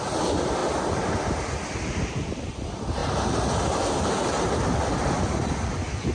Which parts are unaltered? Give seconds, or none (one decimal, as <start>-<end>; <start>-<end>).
0.0-6.1